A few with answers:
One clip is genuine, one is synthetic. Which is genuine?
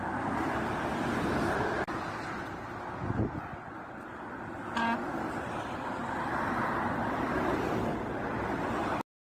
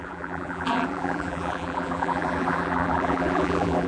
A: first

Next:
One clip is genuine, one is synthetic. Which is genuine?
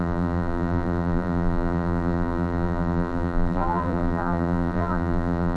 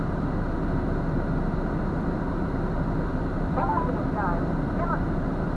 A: second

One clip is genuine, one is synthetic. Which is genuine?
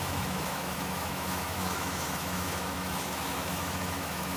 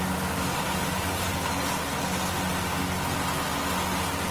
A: second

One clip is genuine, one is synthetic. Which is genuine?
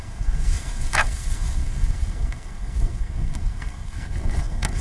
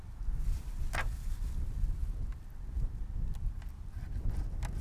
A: second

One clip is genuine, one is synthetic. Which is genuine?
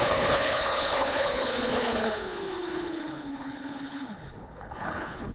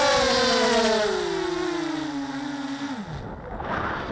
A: second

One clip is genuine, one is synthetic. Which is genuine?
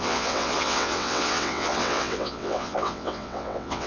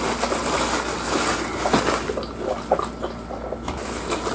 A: second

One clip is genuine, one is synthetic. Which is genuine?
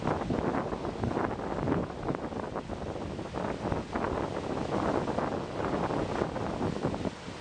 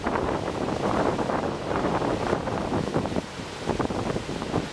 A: first